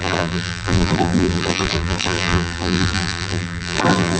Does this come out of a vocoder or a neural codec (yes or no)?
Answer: yes